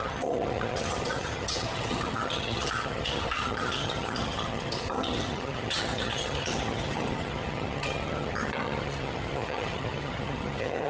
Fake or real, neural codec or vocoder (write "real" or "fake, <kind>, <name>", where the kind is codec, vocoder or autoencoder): fake, vocoder, HiFi-GAN